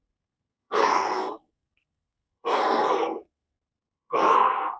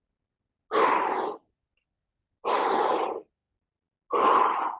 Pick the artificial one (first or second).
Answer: first